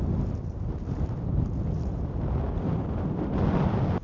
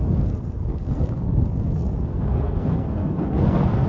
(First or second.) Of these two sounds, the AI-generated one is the second